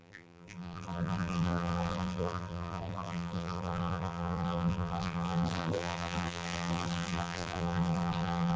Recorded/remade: remade